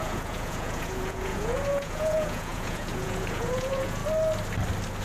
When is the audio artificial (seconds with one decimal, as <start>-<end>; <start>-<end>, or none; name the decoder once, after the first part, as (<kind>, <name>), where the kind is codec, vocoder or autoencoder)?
0.0-4.0 (vocoder, Vocos)